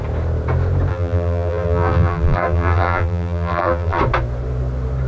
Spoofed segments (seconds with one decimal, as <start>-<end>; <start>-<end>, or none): 0.9-4.0